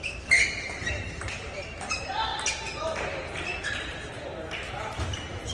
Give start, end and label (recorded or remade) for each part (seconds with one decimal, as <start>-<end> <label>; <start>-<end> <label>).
0.0-0.6 recorded; 0.6-2.3 remade; 2.3-4.5 recorded; 4.5-5.5 remade